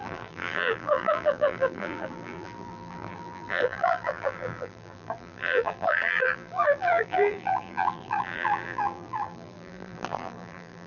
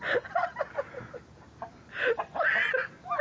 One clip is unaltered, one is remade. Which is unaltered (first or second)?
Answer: second